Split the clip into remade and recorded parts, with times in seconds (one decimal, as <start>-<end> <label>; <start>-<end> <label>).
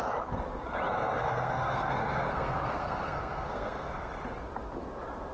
0.0-0.9 recorded; 0.9-4.1 remade; 4.1-5.3 recorded